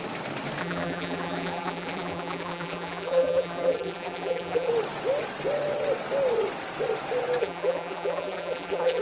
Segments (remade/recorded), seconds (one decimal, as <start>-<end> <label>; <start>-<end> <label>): 0.0-0.6 recorded; 0.6-4.7 remade; 4.7-7.4 recorded; 7.4-9.0 remade